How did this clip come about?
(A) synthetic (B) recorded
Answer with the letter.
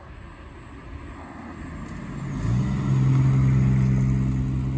B